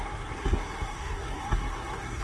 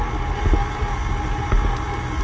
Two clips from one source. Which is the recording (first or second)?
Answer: second